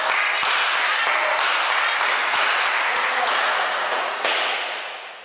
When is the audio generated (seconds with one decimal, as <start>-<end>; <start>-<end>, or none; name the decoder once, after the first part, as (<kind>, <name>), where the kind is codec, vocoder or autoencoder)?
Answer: 2.2-5.2 (vocoder, Vocos)